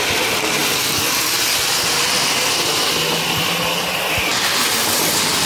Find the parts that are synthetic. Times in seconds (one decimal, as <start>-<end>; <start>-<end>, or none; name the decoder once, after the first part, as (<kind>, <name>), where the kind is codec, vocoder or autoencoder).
0.6-2.9 (vocoder, BigVGAN v2)